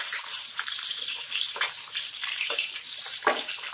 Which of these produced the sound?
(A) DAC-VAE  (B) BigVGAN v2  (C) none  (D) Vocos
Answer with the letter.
B